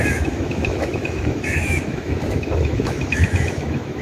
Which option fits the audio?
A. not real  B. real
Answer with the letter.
A